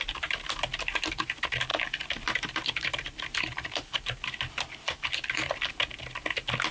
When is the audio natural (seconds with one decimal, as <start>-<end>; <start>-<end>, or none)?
0.0-1.7; 5.7-6.7

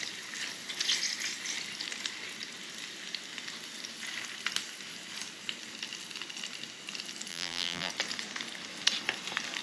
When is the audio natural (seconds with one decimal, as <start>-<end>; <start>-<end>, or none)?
0.0-7.3; 7.9-9.6